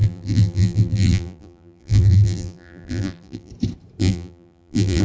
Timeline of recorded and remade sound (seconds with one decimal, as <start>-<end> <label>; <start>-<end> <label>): 0.0-3.5 remade; 3.5-4.0 recorded; 4.0-5.0 remade